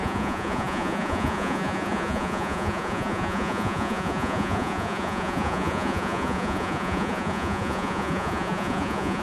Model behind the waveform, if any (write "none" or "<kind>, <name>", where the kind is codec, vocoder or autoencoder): vocoder, Vocos